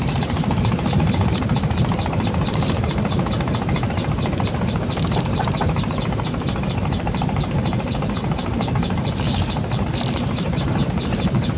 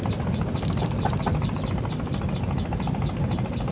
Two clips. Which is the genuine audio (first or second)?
second